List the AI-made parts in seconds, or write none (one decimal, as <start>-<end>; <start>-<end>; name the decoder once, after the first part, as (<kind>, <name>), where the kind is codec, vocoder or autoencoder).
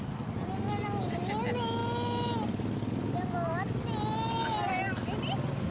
none